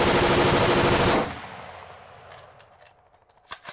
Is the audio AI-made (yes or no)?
no